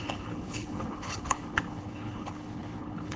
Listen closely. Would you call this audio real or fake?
fake